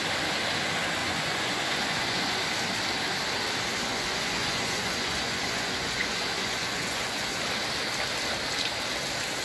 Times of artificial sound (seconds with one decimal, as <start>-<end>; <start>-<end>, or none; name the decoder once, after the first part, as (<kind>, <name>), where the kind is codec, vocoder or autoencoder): 1.0-2.5 (vocoder, Vocos); 3.8-7.4